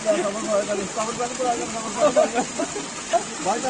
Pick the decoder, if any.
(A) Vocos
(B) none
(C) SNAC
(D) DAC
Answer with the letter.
B